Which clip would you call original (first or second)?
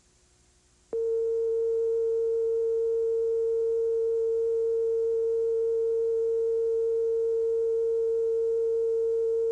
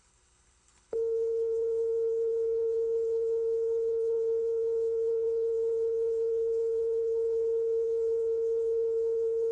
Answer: first